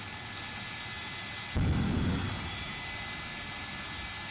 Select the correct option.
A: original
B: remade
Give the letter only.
A